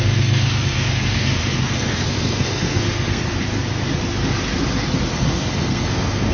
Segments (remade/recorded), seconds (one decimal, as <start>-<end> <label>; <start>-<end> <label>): 0.0-3.2 remade; 3.2-5.1 recorded; 5.1-6.3 remade